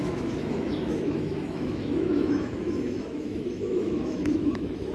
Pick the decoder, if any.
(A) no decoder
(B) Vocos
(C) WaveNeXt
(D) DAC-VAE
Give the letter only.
D